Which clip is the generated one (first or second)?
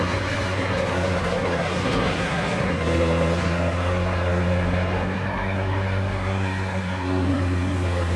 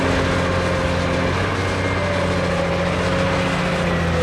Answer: first